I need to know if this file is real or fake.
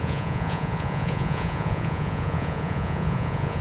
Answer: fake